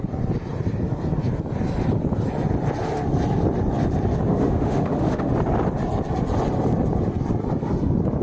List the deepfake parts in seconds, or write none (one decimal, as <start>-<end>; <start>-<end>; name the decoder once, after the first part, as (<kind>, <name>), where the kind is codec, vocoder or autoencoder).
4.3-5.3 (autoencoder, DAC-VAE)